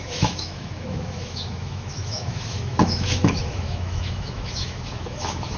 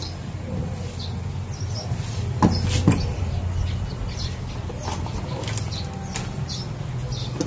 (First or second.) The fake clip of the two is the first